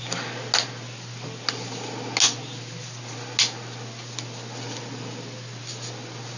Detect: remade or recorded recorded